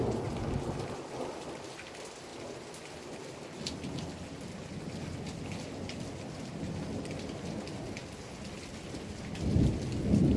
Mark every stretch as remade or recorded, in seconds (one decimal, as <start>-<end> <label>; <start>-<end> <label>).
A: 0.0-10.4 recorded